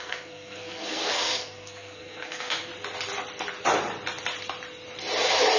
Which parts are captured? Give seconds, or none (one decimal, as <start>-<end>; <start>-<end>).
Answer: 2.7-5.6